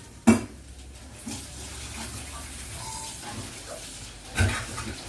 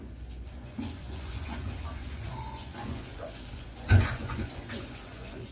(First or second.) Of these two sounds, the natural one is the first